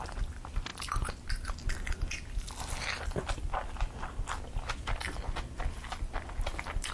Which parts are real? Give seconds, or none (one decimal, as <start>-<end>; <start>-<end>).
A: 0.0-6.9